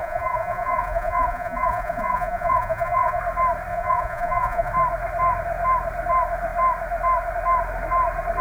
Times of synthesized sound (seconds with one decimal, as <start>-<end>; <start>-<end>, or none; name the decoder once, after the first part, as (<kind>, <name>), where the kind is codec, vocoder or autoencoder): 0.0-3.2 (vocoder, Vocos); 3.7-4.7